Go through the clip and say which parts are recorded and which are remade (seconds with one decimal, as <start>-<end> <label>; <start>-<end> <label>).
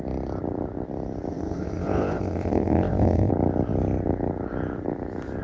0.0-1.3 recorded; 1.3-3.3 remade; 3.3-5.4 recorded